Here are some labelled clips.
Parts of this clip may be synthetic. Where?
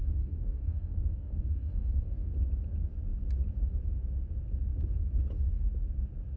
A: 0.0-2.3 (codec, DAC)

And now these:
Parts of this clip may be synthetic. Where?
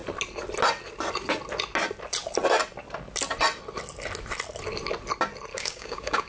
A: 5.5-6.3 (codec, DAC)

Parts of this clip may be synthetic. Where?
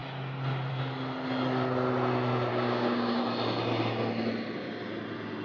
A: 2.5-3.2 (codec, DAC)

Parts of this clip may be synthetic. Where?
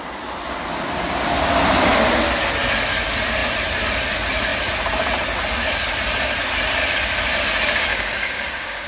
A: 7.9-8.9 (codec, DAC)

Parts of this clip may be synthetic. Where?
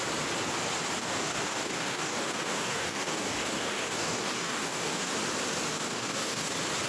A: 1.0-5.1 (codec, DAC); 5.7-6.5